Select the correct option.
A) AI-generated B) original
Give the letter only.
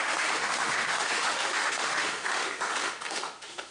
A